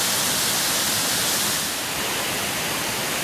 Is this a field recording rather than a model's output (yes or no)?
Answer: yes